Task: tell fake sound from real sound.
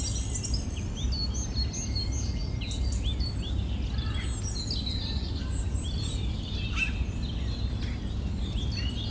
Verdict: real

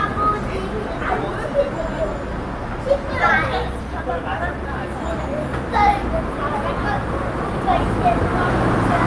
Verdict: real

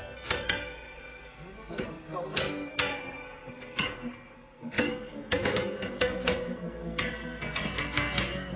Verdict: fake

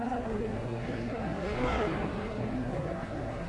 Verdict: fake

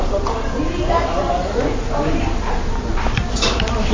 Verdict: real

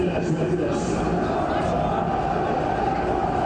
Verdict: real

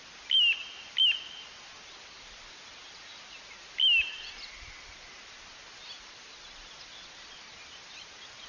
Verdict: real